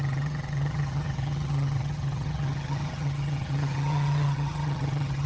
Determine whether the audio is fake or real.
fake